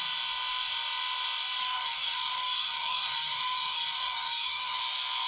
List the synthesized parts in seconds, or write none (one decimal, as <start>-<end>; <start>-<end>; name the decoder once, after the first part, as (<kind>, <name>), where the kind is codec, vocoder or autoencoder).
1.6-4.8 (codec, DAC)